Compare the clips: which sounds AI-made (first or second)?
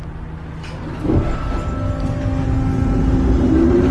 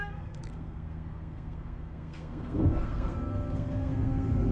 second